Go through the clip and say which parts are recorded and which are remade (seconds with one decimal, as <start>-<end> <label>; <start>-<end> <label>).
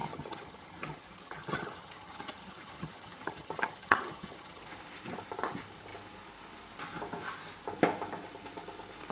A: 0.0-4.6 remade; 4.6-9.1 recorded